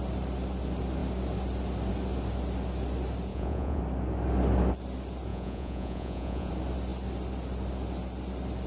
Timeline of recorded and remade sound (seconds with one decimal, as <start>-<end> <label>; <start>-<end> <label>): 0.0-3.3 recorded; 3.3-3.8 remade; 3.8-5.3 recorded; 5.3-6.5 remade; 6.5-8.7 recorded

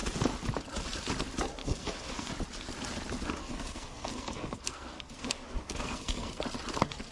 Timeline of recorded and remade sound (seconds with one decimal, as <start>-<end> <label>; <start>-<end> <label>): 0.0-1.6 recorded; 1.6-2.3 remade; 2.3-3.4 recorded; 3.4-6.4 remade; 6.4-7.1 recorded

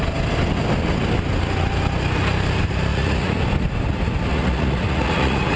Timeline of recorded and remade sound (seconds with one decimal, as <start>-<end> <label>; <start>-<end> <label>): 0.0-2.9 recorded; 2.9-3.4 remade; 3.4-4.3 recorded; 4.3-5.6 remade

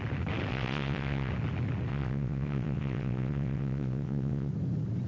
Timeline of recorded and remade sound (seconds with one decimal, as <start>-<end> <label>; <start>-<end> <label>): 0.0-0.5 recorded; 0.5-1.3 remade; 1.3-1.9 recorded; 1.9-4.5 remade; 4.5-5.1 recorded